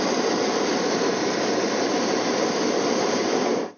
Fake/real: real